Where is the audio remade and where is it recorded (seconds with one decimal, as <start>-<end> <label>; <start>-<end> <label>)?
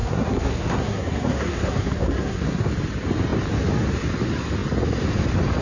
0.0-2.7 remade; 2.7-5.6 recorded